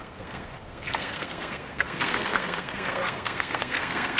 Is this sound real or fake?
fake